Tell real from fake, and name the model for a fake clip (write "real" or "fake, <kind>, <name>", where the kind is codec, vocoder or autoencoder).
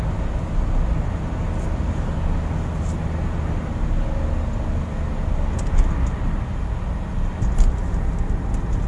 real